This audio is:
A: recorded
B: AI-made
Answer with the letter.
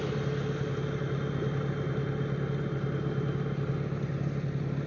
A